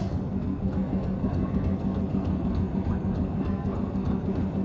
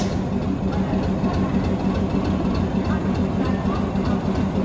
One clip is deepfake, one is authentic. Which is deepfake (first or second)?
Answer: first